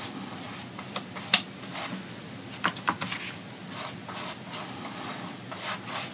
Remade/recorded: recorded